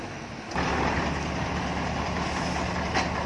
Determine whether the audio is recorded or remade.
recorded